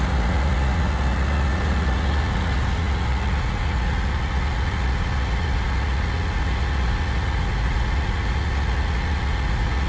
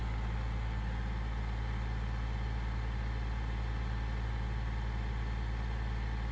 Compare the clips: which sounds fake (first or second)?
first